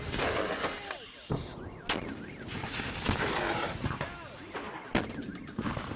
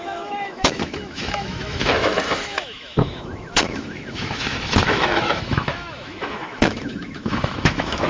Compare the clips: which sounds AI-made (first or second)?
second